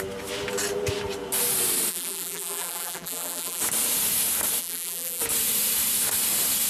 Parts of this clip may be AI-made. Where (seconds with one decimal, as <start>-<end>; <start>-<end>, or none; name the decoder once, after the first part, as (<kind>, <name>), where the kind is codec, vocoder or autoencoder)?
1.9-3.6 (vocoder, BigVGAN v2); 4.6-5.2